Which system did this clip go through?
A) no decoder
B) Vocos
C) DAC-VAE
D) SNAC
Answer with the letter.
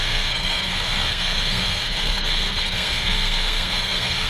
D